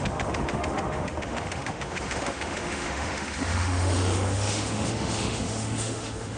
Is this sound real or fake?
fake